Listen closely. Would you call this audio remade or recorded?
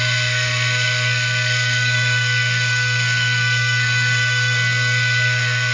remade